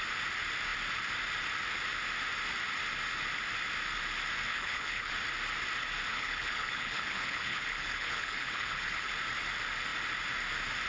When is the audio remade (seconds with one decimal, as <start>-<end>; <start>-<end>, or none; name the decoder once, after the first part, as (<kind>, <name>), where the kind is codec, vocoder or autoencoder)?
4.5-5.1 (codec, HILCodec); 6.1-9.1